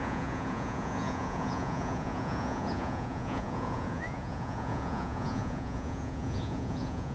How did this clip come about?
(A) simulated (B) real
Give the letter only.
A